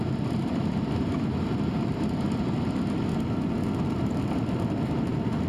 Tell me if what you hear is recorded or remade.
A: recorded